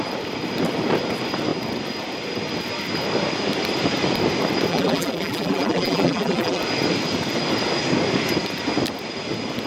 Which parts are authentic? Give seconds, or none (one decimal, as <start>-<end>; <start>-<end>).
0.0-4.7; 6.6-9.7